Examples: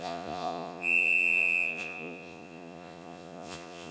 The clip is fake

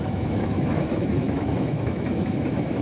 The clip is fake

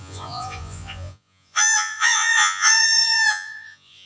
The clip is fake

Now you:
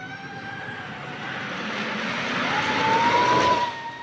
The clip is real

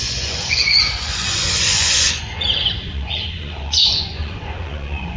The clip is fake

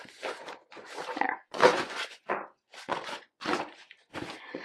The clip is fake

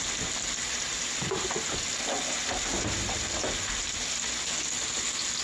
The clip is real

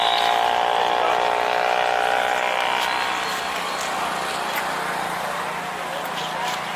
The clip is real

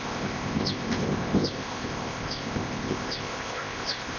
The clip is fake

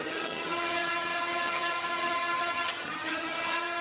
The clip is fake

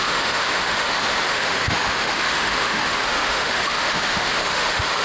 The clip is fake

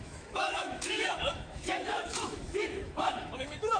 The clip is fake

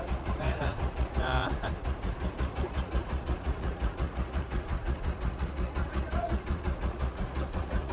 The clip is fake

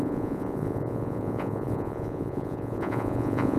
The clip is fake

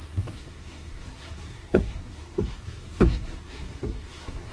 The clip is fake